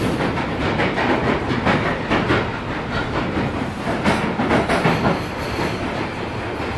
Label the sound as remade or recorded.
recorded